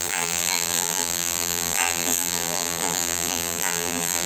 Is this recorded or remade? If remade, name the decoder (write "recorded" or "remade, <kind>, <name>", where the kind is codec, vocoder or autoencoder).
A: remade, vocoder, BigVGAN v2